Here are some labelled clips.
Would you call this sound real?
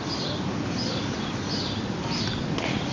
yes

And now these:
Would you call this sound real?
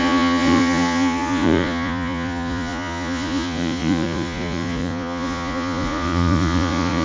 no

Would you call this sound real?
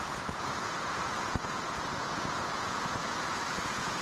no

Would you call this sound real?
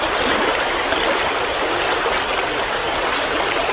yes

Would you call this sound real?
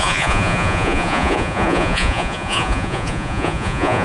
no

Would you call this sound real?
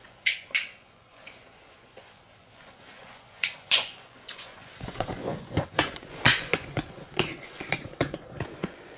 no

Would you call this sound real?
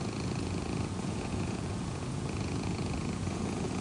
no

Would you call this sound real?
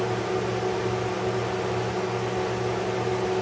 yes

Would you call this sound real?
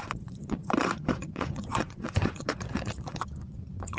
no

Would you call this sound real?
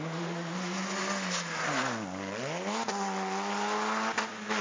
yes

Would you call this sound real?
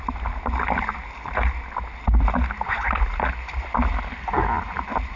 yes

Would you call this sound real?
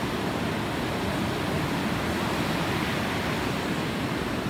yes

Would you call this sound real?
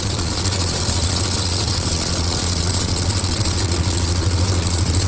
no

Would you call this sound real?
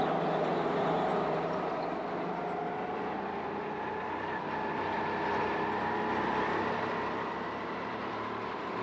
yes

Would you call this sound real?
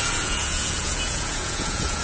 no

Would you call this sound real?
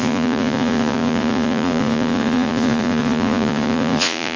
no